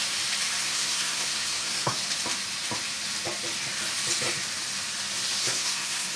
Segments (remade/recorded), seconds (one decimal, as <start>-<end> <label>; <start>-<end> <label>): 0.0-0.6 recorded; 0.6-2.0 remade; 2.0-5.4 recorded; 5.4-6.2 remade